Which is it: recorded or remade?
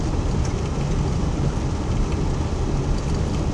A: recorded